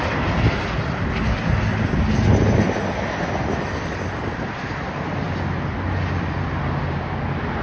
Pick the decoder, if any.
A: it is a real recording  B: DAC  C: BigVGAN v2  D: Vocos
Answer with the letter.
A